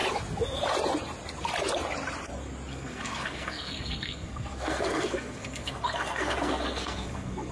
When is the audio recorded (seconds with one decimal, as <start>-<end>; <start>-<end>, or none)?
0.0-2.7